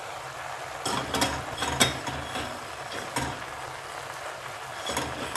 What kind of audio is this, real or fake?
real